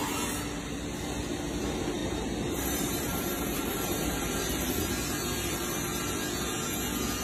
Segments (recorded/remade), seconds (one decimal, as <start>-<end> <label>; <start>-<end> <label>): 0.0-2.0 recorded; 2.0-4.2 remade; 4.2-7.2 recorded